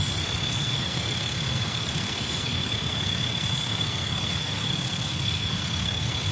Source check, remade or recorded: remade